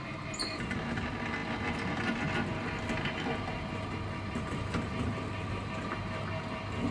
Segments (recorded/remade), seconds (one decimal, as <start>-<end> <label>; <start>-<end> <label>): 0.0-6.9 recorded